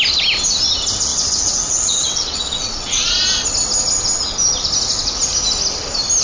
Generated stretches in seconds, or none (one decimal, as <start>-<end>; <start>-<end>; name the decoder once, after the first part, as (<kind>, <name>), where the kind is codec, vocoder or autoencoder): 1.1-3.2 (vocoder, WaveNeXt)